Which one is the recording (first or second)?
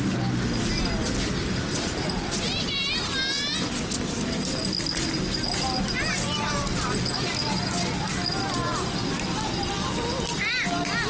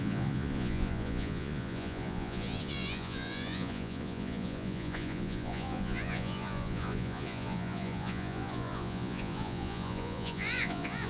first